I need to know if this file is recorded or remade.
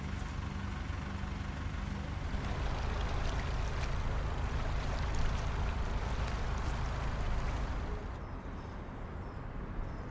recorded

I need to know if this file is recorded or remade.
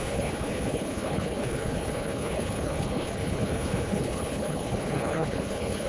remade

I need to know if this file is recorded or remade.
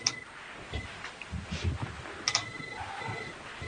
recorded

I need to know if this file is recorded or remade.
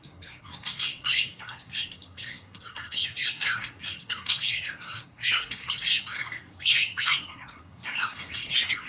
remade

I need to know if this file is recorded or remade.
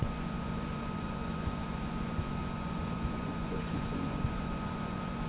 remade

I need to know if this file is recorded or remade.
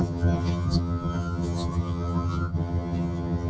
remade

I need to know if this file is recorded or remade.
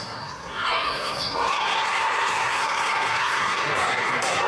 remade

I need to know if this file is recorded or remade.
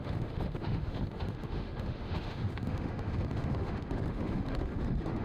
remade